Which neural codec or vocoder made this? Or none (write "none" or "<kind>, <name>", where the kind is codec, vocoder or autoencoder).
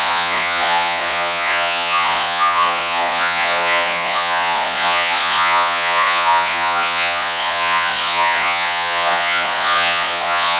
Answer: vocoder, Vocos